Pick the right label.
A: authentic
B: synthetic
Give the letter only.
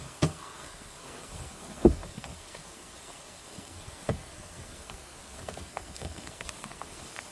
B